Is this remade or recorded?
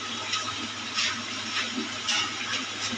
recorded